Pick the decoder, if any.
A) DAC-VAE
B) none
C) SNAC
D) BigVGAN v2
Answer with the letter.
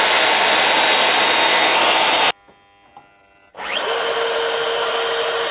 B